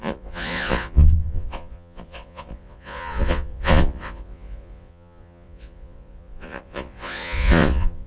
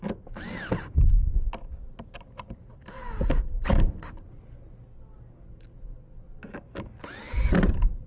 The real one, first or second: second